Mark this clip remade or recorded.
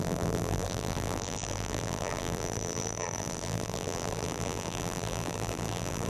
remade